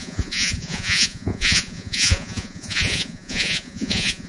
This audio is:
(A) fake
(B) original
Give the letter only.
A